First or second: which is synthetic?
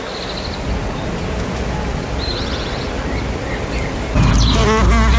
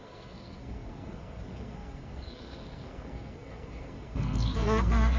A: second